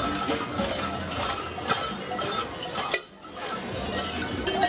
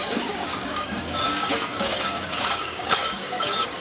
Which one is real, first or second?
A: first